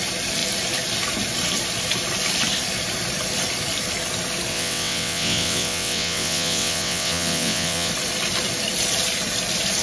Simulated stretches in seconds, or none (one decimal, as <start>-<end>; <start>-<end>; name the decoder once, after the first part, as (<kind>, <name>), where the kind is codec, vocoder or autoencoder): 4.5-7.9 (vocoder, WaveNeXt)